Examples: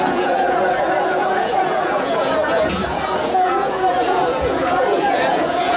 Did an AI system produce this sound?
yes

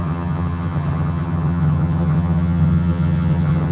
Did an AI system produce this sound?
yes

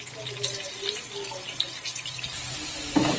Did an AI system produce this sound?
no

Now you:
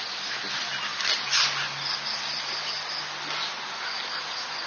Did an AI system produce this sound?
no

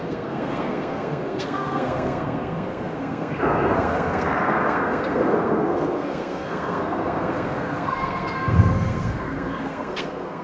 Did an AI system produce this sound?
yes